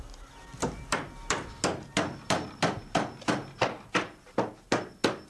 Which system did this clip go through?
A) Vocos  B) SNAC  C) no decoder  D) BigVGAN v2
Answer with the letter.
C